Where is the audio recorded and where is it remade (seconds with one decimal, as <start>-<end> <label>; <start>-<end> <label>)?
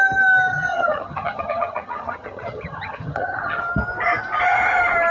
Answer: 0.0-0.5 recorded; 0.5-3.6 remade; 3.6-5.1 recorded